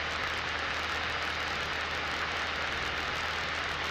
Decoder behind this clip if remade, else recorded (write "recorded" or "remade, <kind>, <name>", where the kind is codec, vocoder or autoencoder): recorded